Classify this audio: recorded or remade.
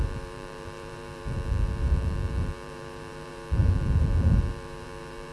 remade